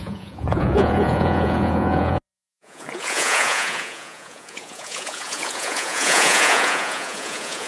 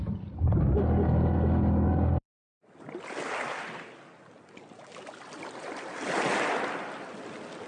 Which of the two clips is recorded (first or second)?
second